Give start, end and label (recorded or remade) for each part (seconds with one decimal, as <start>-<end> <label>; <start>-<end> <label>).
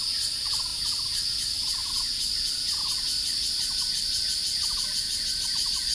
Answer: 0.0-5.9 recorded